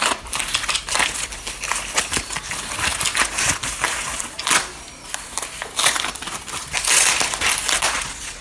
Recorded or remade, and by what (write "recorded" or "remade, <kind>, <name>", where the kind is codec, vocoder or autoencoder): recorded